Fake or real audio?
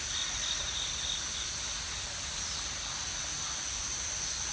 real